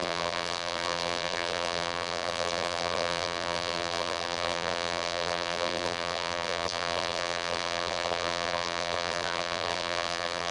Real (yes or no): no